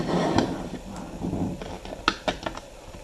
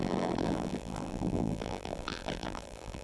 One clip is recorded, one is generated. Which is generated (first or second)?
second